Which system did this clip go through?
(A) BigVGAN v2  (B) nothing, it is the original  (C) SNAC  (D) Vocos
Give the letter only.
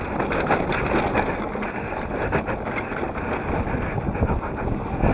B